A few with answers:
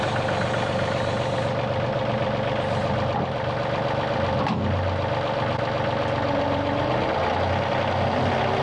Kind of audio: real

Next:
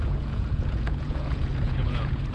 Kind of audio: fake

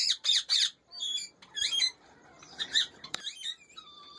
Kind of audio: fake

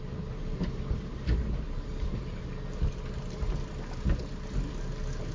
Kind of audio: real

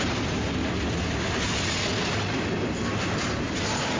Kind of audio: real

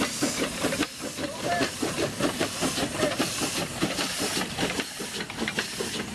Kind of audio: fake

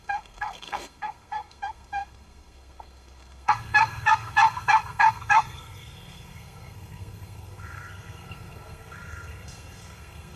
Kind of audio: fake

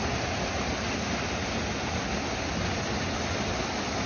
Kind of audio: real